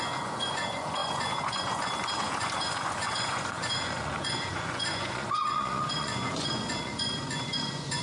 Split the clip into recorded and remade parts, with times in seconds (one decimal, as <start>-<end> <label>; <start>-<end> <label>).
0.0-8.0 remade